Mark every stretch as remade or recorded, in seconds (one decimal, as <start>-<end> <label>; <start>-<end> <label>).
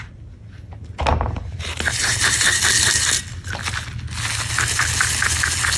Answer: 0.0-1.1 recorded; 1.1-2.2 remade; 2.2-5.8 recorded